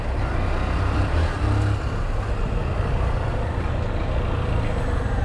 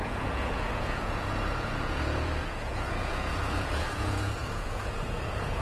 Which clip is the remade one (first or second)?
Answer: second